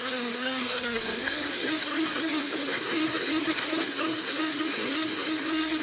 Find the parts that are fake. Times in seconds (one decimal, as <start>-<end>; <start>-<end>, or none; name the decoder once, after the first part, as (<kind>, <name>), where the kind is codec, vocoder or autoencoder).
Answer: 0.0-5.8 (codec, SNAC)